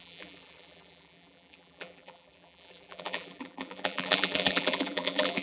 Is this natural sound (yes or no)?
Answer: no